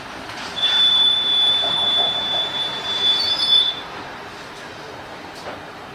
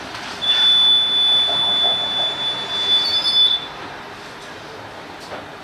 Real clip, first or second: second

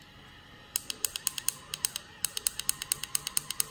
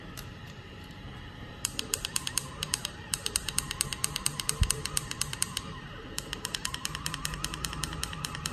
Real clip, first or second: first